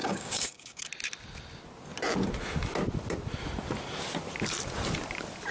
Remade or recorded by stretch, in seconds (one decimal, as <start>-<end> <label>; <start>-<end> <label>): 0.0-0.9 remade; 0.9-5.5 recorded